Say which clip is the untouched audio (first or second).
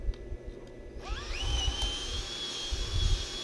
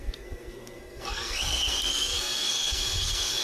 first